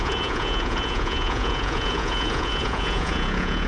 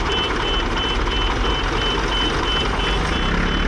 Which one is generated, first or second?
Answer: first